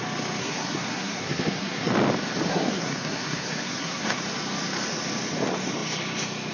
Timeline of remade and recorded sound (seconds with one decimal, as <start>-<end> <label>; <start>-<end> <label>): 0.0-0.4 recorded; 0.4-1.9 remade; 1.9-2.5 recorded; 2.5-4.2 remade; 4.2-6.5 recorded